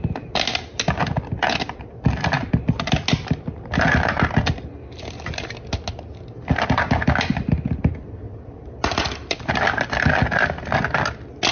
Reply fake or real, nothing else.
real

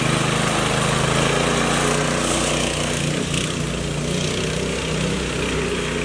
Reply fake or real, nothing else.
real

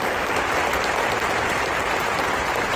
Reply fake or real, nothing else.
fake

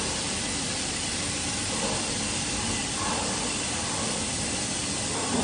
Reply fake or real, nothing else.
fake